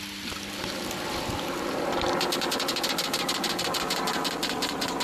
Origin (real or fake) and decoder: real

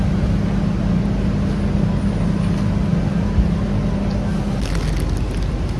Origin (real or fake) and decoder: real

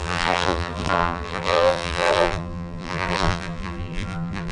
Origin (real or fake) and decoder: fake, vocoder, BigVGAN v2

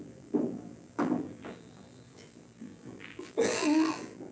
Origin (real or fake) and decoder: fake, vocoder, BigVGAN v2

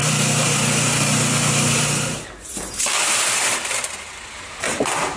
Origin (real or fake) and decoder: fake, vocoder, BigVGAN v2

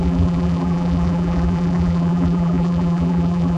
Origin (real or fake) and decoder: fake, vocoder, BigVGAN v2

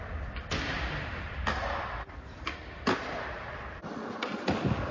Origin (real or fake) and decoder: fake, vocoder, BigVGAN v2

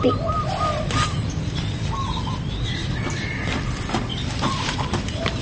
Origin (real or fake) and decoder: fake, vocoder, BigVGAN v2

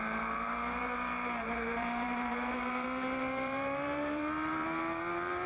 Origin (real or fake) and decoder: fake, vocoder, BigVGAN v2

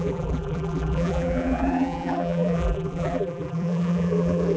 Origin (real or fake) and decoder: fake, vocoder, BigVGAN v2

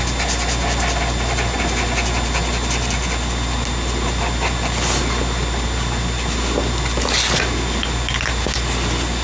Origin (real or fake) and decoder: real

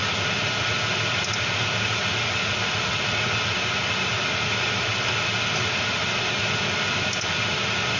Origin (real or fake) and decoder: real